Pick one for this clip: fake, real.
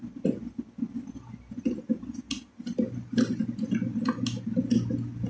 real